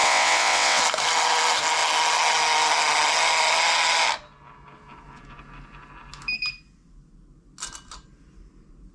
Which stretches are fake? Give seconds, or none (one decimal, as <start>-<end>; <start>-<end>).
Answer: 0.0-0.8

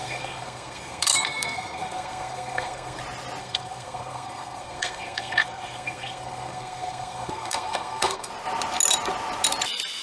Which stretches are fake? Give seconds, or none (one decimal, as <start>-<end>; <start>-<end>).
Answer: 0.0-3.0; 3.4-8.3

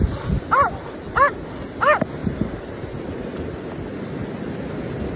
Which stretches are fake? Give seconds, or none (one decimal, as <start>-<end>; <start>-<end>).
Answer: none

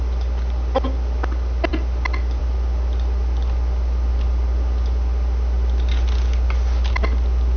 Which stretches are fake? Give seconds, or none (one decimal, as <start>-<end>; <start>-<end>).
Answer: none

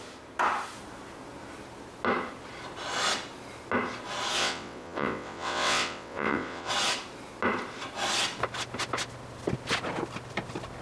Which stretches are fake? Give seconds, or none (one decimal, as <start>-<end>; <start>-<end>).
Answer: 4.4-6.7